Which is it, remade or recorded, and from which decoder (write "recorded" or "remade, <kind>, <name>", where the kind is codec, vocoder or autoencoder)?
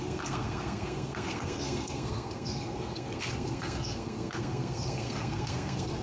remade, codec, SNAC